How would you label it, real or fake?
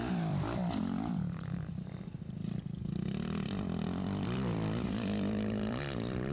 fake